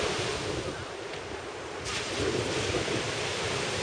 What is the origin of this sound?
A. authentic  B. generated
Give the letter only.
B